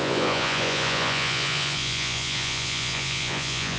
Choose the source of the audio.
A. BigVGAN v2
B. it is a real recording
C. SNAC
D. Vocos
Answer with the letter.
D